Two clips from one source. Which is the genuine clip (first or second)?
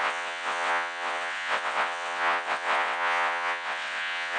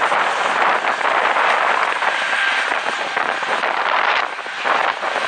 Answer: second